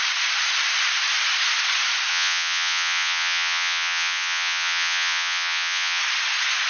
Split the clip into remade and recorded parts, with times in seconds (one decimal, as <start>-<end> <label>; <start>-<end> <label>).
0.0-2.1 recorded; 2.1-6.0 remade; 6.0-6.7 recorded